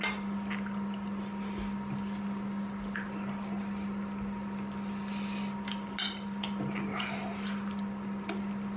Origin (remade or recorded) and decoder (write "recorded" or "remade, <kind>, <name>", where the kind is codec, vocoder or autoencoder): recorded